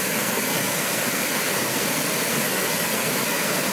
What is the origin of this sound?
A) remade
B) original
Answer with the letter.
A